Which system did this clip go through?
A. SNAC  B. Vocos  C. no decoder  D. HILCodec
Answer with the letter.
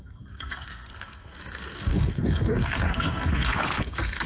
A